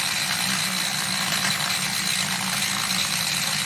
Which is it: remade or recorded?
recorded